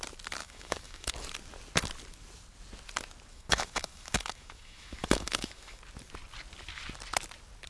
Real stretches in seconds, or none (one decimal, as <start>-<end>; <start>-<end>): 0.0-0.4; 1.1-3.3; 5.8-7.7